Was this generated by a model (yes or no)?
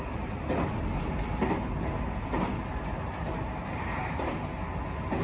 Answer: no